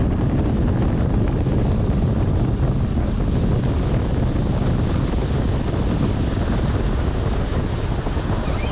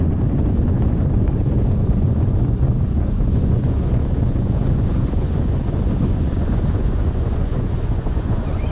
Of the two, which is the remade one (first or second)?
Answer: second